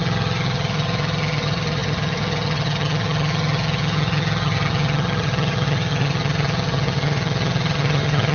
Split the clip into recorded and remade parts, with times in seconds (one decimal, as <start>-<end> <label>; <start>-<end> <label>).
0.0-8.3 remade